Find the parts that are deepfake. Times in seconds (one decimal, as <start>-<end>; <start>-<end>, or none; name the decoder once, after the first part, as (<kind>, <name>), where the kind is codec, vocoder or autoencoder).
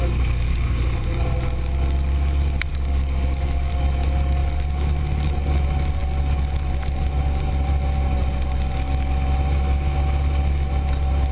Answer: 0.5-1.2 (codec, DAC); 2.7-3.7